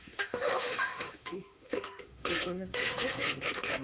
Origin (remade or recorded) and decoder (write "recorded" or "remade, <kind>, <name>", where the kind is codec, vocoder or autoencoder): remade, autoencoder, DAC-VAE